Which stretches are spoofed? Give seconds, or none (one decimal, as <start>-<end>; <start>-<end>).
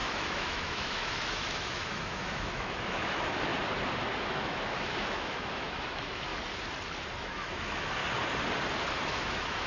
0.0-3.5; 4.2-6.3; 7.2-8.0; 9.1-9.7